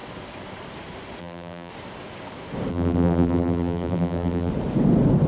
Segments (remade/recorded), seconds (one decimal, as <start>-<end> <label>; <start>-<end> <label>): 0.0-1.2 recorded; 1.2-1.7 remade; 1.7-2.7 recorded; 2.7-4.5 remade; 4.5-5.3 recorded